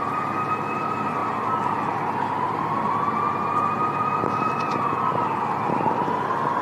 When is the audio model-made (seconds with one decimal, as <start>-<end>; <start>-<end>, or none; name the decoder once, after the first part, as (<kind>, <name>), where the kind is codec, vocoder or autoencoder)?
none